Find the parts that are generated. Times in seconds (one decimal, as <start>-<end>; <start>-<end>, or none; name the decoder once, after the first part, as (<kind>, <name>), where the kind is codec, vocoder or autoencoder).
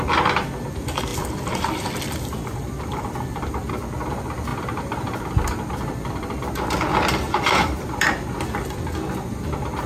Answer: 1.1-3.7 (vocoder, BigVGAN v2)